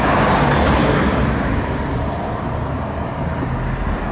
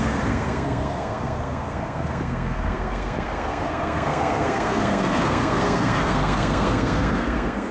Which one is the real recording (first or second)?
first